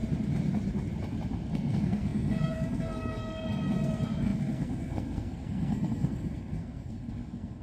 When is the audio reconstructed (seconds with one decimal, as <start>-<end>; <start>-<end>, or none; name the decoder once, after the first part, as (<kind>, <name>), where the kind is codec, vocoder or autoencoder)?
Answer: 1.5-7.6 (codec, SNAC)